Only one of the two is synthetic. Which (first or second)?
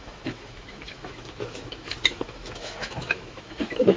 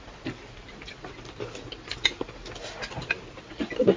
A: first